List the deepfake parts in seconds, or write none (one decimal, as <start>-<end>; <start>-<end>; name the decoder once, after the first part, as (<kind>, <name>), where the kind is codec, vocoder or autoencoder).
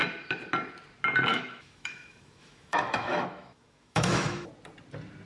1.3-4.5 (autoencoder, DAC-VAE)